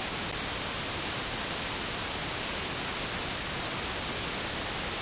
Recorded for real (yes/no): yes